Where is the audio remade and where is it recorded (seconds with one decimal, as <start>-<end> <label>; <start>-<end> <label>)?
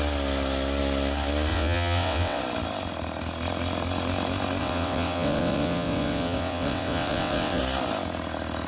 0.0-1.5 recorded; 1.5-2.4 remade; 2.4-4.6 recorded; 4.6-7.6 remade; 7.6-8.7 recorded